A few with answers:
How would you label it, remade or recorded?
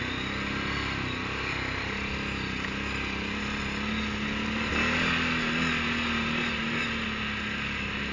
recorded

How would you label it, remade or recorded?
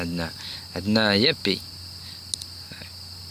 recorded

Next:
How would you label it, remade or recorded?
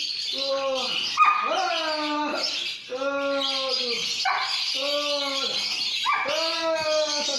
recorded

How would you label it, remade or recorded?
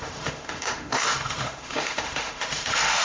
remade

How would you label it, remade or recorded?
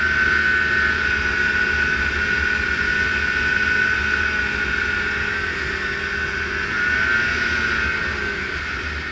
recorded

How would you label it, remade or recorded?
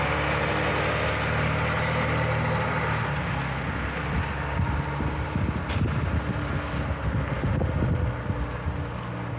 recorded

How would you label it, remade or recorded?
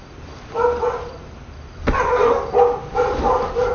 recorded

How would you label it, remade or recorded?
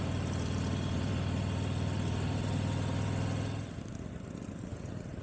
recorded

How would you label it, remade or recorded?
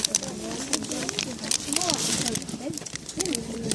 remade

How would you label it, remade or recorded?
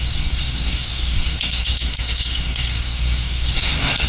remade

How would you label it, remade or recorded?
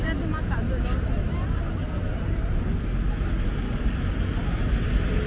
recorded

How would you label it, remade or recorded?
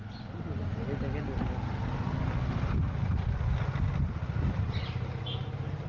recorded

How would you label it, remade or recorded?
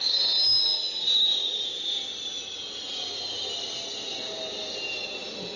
recorded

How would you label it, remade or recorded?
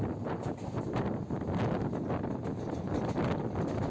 recorded